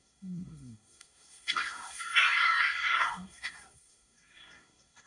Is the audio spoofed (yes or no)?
yes